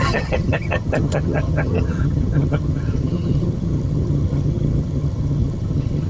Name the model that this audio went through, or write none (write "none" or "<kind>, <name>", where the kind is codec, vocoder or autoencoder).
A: vocoder, HiFi-GAN